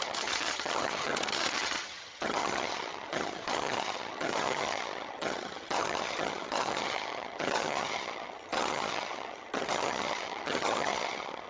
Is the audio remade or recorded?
remade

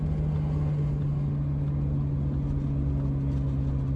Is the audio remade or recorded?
recorded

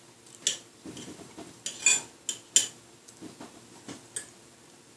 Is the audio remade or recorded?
recorded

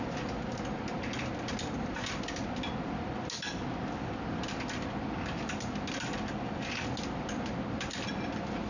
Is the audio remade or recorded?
recorded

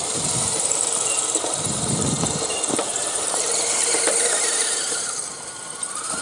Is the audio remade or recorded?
remade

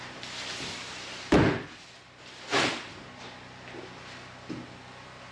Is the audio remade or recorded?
recorded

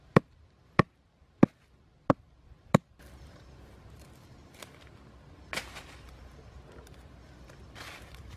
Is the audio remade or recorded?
recorded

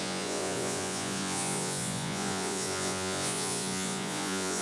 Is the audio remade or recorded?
remade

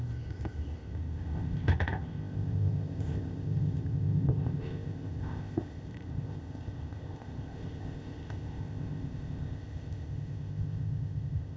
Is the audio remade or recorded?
remade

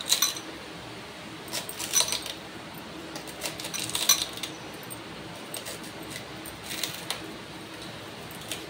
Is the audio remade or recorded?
recorded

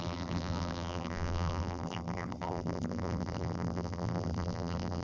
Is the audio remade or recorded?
remade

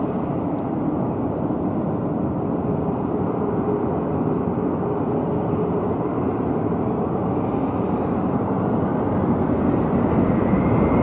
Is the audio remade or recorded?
recorded